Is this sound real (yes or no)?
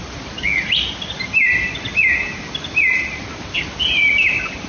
yes